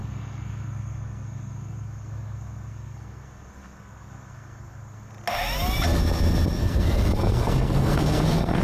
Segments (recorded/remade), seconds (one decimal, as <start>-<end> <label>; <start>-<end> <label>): 0.0-5.1 remade; 5.1-6.6 recorded; 6.6-8.6 remade